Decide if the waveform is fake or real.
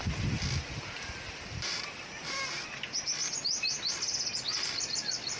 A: real